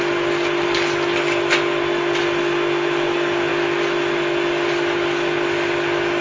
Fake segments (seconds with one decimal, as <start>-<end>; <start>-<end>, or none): none